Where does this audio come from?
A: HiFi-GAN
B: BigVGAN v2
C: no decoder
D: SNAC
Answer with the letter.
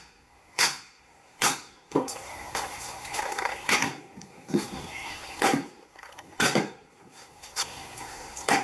D